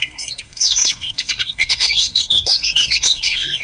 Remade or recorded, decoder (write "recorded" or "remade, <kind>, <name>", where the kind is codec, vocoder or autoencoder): remade, codec, SNAC